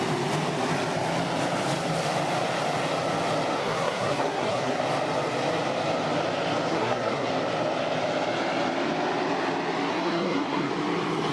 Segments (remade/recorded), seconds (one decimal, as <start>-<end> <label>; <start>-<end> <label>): 0.0-3.6 recorded; 3.6-4.8 remade; 4.8-6.7 recorded; 6.7-7.3 remade; 7.3-9.9 recorded; 9.9-10.7 remade; 10.7-11.3 recorded